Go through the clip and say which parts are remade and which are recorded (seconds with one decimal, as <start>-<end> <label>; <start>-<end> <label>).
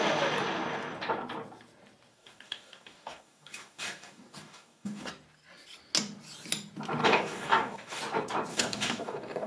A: 0.0-2.1 recorded; 2.1-5.1 remade; 5.1-7.0 recorded; 7.0-8.0 remade; 8.0-8.5 recorded; 8.5-9.5 remade